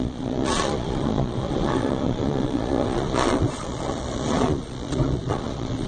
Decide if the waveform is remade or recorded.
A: remade